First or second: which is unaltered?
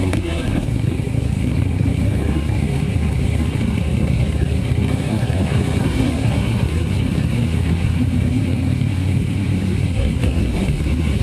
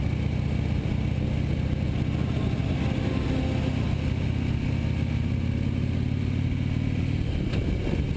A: second